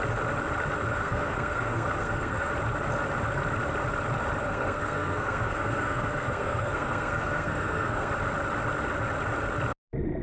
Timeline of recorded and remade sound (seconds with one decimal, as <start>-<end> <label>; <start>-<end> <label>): 0.0-0.9 recorded; 0.9-2.5 remade; 2.5-4.4 recorded; 4.4-8.1 remade; 8.1-10.2 recorded